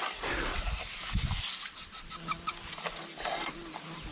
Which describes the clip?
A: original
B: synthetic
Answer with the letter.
A